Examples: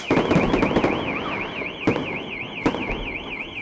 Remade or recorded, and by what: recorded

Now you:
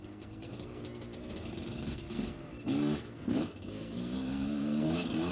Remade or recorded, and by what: remade, codec, SNAC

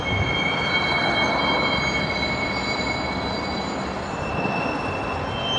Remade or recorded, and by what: recorded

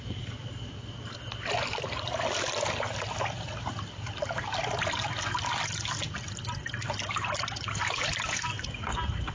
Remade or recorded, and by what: recorded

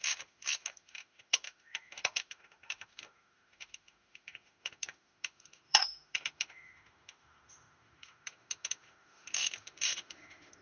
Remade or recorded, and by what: remade, autoencoder, DAC-VAE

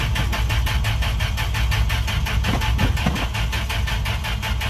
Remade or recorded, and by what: recorded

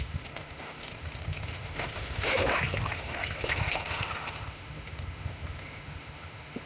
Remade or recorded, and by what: remade, autoencoder, DAC-VAE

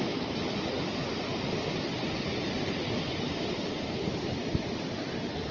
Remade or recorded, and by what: recorded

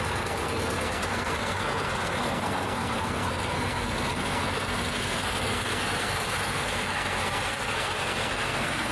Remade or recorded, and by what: remade, codec, SNAC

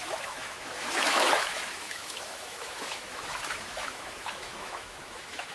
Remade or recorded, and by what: remade, autoencoder, DAC-VAE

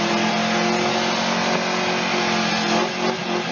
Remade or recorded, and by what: recorded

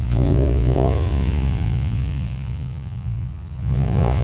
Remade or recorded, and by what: remade, vocoder, Vocos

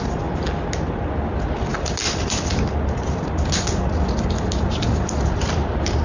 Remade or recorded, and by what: recorded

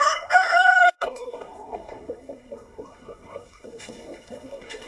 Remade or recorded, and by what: remade, codec, SNAC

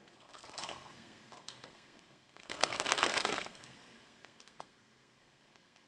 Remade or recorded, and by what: remade, codec, SNAC